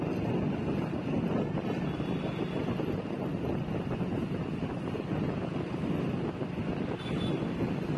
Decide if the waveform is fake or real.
real